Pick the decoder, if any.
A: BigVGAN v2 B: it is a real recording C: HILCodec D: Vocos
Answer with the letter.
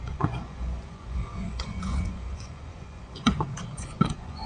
D